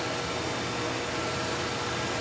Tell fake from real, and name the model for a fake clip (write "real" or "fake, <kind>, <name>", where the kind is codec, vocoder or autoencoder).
real